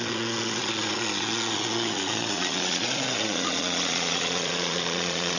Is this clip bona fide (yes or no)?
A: no